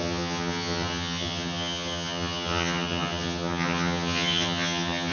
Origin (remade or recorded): remade